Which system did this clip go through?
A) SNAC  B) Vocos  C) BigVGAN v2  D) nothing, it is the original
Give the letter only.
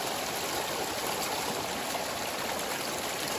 D